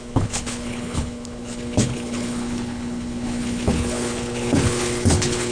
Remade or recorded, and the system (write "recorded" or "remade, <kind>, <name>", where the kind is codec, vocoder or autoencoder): remade, codec, HILCodec